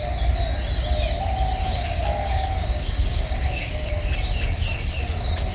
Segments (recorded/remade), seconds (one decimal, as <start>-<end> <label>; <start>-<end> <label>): 0.0-1.6 recorded; 1.6-3.9 remade; 3.9-5.5 recorded